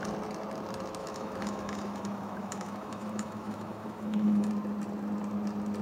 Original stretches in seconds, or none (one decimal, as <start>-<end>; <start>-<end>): 0.0-1.0; 4.5-5.8